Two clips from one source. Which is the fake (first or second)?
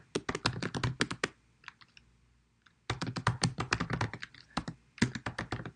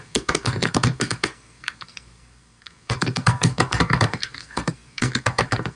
second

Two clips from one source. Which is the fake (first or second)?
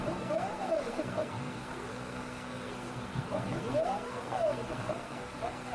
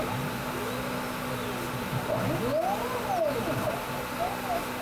first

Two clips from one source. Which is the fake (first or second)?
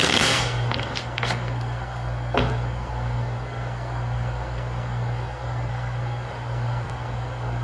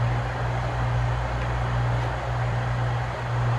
first